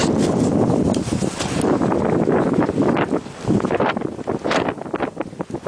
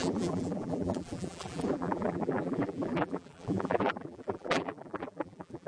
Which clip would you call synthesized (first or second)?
second